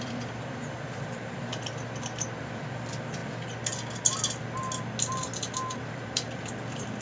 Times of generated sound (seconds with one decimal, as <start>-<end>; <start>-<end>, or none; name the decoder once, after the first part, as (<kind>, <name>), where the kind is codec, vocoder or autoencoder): 0.0-1.5 (vocoder, BigVGAN v2); 2.4-3.2; 5.9-7.0